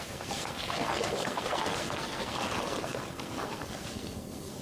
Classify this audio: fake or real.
fake